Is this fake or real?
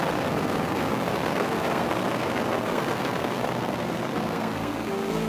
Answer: fake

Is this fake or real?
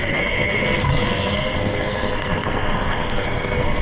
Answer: fake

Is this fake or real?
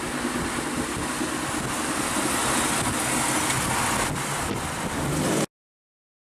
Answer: real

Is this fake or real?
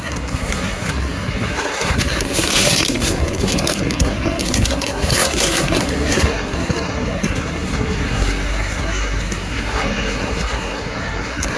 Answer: fake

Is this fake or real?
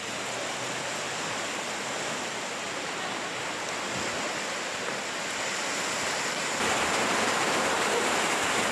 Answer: real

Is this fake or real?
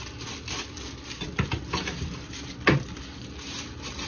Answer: real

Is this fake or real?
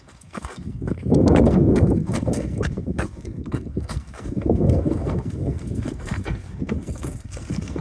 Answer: fake